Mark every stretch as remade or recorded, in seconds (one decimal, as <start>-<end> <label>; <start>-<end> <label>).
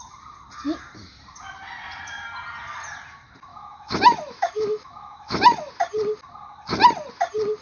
0.0-3.5 recorded; 3.5-5.7 remade; 5.7-7.6 recorded